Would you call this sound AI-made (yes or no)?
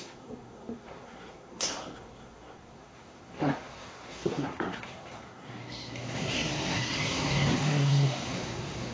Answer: yes